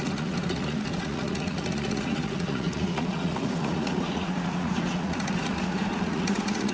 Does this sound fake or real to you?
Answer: fake